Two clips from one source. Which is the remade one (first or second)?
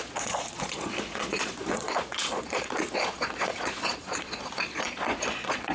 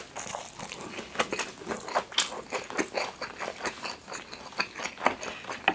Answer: first